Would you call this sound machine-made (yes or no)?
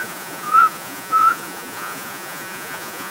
yes